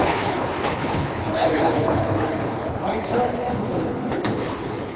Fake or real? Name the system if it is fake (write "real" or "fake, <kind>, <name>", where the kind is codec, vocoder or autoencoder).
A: fake, codec, HILCodec